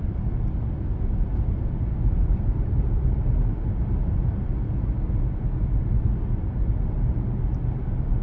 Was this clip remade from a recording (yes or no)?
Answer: no